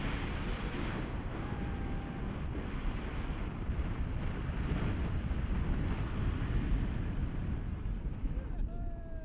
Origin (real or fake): fake